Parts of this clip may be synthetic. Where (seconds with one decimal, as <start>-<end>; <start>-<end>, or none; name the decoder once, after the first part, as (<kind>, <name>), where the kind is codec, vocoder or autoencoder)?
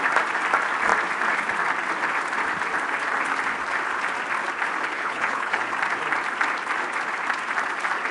4.9-5.6 (codec, HILCodec)